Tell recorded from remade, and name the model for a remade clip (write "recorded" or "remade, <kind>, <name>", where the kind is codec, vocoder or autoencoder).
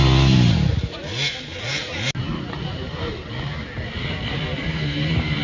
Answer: recorded